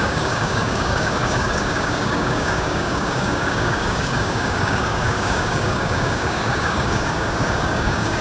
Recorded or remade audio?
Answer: remade